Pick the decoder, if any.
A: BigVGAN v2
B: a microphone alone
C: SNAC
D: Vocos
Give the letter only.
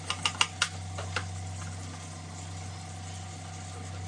B